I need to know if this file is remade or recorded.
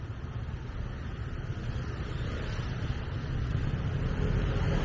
recorded